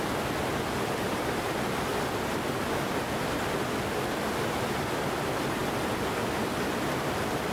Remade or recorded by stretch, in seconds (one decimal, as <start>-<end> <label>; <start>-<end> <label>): 0.0-7.5 recorded